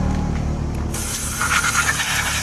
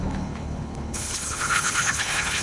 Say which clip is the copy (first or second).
second